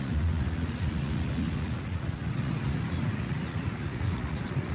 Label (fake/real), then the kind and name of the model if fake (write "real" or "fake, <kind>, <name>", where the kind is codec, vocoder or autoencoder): fake, vocoder, Vocos